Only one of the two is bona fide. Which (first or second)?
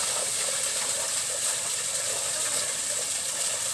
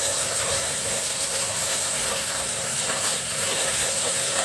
first